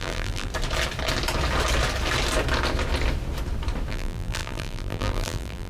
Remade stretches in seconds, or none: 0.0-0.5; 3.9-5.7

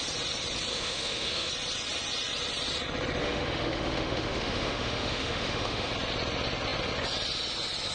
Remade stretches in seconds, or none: 0.7-1.5; 3.2-5.9

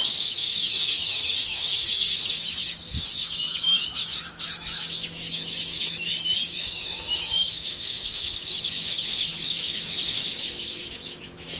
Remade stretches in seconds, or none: 0.0-11.6